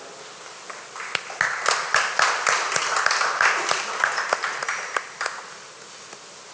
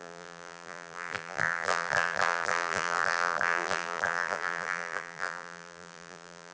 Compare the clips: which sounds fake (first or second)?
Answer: second